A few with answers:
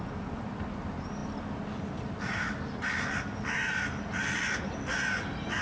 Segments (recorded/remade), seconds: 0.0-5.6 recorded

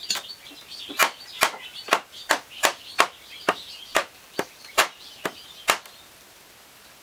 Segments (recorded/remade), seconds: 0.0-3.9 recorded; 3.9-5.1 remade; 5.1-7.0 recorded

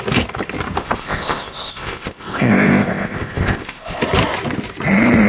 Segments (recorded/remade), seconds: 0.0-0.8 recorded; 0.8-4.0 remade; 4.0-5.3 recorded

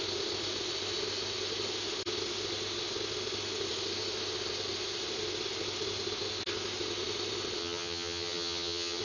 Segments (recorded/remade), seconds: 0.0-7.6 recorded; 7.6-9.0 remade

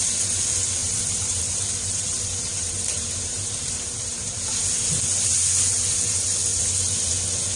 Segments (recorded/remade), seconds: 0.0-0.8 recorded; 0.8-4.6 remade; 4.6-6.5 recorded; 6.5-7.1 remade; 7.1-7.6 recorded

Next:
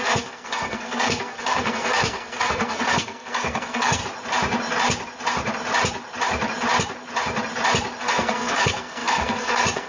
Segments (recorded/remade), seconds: 0.0-4.0 remade; 4.0-8.0 recorded; 8.0-9.9 remade